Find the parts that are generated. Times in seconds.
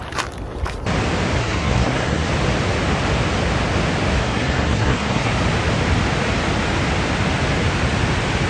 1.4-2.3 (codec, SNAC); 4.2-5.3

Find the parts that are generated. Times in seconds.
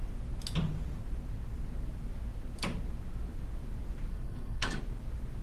4.1-4.8 (codec, SNAC)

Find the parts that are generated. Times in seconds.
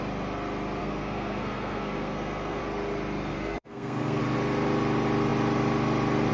0.8-2.6 (codec, SNAC); 3.3-4.2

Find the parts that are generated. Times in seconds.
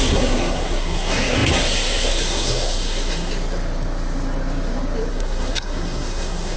0.0-3.3 (codec, SNAC); 5.1-6.6